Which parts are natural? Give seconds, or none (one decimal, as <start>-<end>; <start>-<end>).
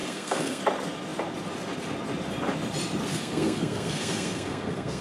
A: 0.6-3.1